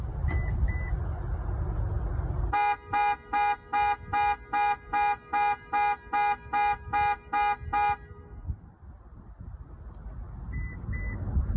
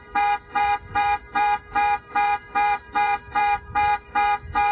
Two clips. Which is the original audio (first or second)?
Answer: first